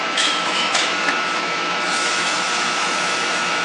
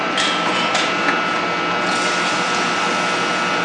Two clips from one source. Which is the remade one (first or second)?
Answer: first